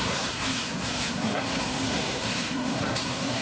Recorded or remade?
remade